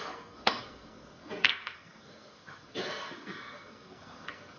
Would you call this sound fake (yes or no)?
yes